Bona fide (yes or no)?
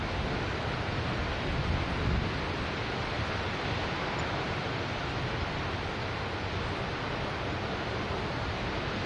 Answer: yes